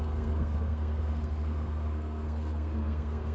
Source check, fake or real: fake